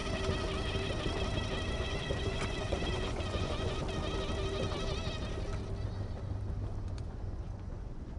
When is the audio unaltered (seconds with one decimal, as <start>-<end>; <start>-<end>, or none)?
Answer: 0.0-1.7; 3.8-6.8

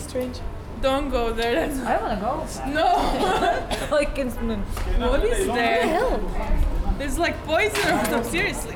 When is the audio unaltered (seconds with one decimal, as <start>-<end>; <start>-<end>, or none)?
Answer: 0.0-1.9; 4.2-8.8

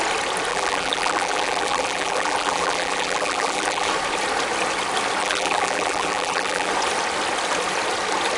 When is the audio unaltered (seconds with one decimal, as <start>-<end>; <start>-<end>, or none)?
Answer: 0.0-0.5; 3.9-5.2; 6.7-8.4

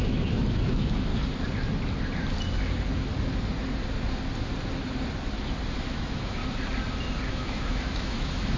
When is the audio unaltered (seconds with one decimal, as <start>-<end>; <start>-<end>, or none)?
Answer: 1.1-5.7; 6.4-7.3